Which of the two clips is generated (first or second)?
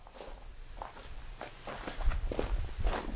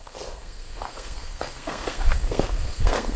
second